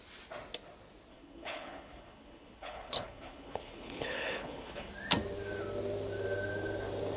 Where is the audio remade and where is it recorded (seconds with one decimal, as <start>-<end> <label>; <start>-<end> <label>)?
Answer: 0.0-1.1 recorded; 1.1-4.9 remade; 4.9-7.2 recorded